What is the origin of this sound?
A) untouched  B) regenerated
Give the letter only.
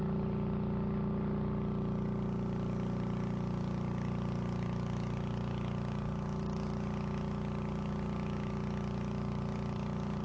A